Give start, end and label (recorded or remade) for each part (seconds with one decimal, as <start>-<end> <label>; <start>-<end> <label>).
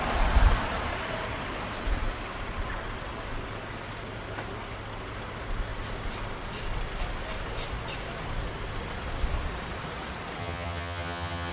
0.0-10.4 recorded; 10.4-11.5 remade